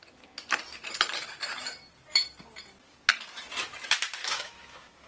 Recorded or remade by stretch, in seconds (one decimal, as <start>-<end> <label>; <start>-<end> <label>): 0.0-4.2 recorded; 4.2-5.1 remade